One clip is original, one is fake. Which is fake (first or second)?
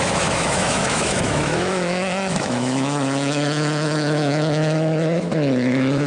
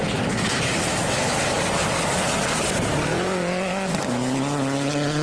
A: first